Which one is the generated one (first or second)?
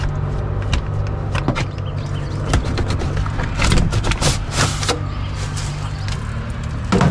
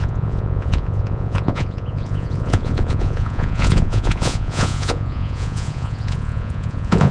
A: second